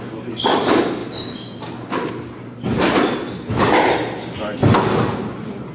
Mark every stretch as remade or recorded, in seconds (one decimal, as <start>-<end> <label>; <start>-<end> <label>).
0.0-1.0 recorded; 1.0-1.7 remade; 1.7-4.6 recorded; 4.6-5.7 remade